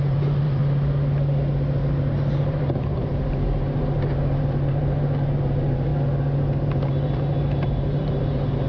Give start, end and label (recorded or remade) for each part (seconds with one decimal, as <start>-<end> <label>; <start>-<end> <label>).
0.0-0.6 remade; 0.6-2.4 recorded; 2.4-5.9 remade; 5.9-6.6 recorded; 6.6-8.7 remade